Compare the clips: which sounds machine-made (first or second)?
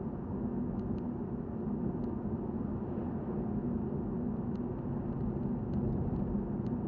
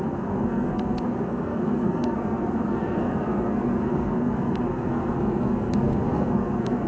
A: second